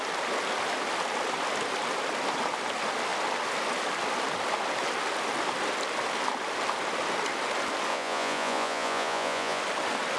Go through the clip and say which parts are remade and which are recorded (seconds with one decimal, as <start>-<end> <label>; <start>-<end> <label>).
0.0-7.9 recorded; 7.9-9.6 remade; 9.6-10.2 recorded

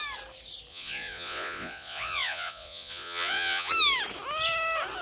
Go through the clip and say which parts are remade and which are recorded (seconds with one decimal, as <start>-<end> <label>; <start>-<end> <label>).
0.0-0.7 recorded; 0.7-3.7 remade; 3.7-5.0 recorded

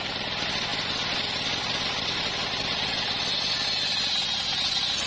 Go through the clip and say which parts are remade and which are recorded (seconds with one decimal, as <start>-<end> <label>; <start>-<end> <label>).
0.0-5.1 recorded

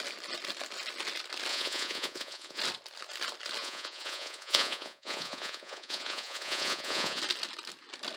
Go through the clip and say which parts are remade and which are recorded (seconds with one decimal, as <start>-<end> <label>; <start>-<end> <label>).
0.0-1.5 recorded; 1.5-2.6 remade; 2.6-3.6 recorded; 3.6-7.2 remade; 7.2-8.2 recorded

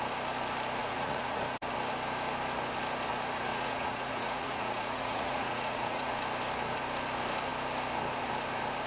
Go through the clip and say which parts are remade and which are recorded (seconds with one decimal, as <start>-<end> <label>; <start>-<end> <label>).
0.0-0.8 recorded; 0.8-1.4 remade; 1.4-3.5 recorded; 3.5-6.2 remade; 6.2-8.9 recorded